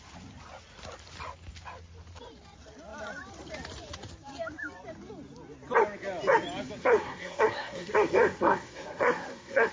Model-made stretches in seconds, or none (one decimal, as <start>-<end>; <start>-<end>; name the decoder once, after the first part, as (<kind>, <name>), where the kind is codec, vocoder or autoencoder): 6.8-9.7 (codec, SNAC)